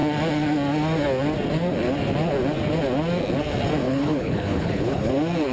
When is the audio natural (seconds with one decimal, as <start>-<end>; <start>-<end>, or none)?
0.0-3.8; 5.1-5.5